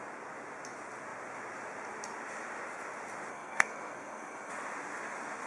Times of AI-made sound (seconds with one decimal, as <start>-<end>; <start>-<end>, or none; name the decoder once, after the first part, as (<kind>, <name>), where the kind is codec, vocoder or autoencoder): 3.3-4.5 (codec, SNAC)